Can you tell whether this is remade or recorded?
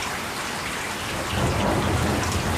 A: recorded